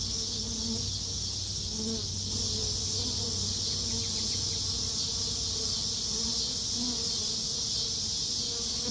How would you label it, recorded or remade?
recorded